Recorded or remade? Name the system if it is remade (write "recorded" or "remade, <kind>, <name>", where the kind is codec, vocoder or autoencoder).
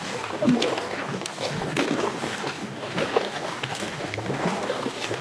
remade, codec, DAC